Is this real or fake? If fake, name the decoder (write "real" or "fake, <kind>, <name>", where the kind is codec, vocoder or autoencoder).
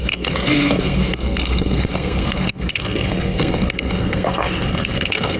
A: fake, codec, SNAC